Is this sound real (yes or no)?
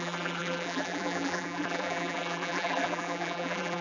no